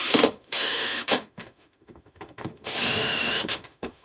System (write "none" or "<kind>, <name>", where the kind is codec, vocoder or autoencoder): autoencoder, DAC-VAE